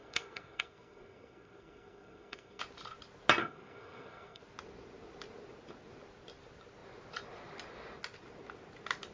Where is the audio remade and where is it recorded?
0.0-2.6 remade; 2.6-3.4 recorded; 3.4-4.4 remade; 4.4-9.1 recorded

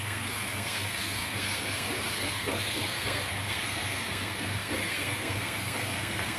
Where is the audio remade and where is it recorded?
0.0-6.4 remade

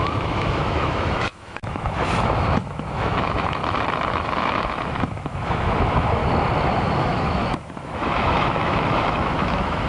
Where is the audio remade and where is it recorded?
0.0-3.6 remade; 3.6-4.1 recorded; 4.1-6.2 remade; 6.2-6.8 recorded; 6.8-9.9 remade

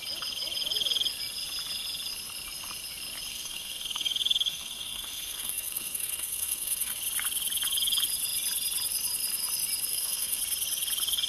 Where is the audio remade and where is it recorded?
0.0-3.3 recorded; 3.3-7.0 remade; 7.0-9.9 recorded; 9.9-10.4 remade; 10.4-11.3 recorded

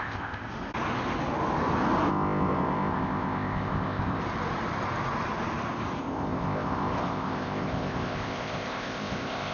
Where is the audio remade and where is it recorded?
0.0-0.5 remade; 0.5-2.1 recorded; 2.1-4.2 remade; 4.2-6.0 recorded; 6.0-9.5 remade

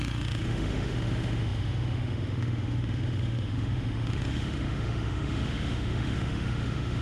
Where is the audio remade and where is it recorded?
0.0-7.0 remade

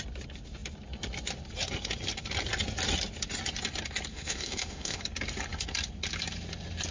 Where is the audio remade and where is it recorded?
0.0-4.1 recorded; 4.1-5.0 remade; 5.0-6.9 recorded